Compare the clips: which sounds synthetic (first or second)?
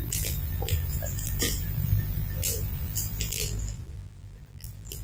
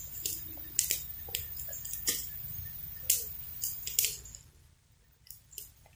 first